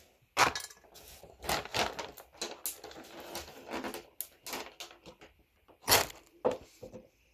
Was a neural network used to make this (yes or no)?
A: no